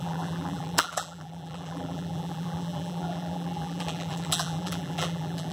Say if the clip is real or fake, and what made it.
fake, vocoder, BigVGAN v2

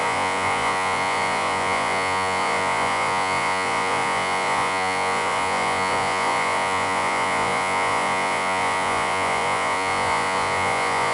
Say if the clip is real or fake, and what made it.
fake, vocoder, Vocos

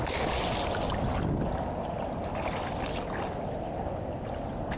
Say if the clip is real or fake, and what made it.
real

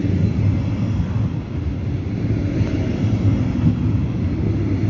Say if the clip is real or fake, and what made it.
real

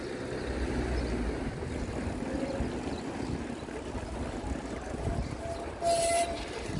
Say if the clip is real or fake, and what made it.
real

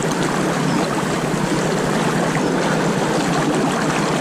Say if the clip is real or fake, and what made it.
real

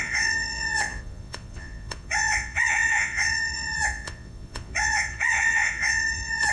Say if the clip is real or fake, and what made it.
fake, vocoder, Vocos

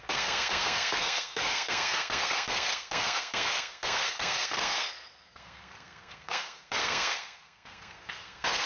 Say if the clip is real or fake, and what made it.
fake, codec, SNAC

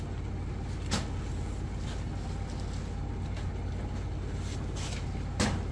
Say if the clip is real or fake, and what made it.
real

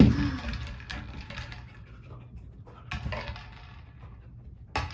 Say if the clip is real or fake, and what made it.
real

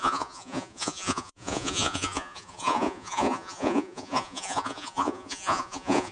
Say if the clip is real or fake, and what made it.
fake, vocoder, Vocos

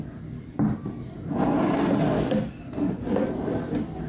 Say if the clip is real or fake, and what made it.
real